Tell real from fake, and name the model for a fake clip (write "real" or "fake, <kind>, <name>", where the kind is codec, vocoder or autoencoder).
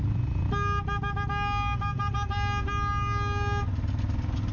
real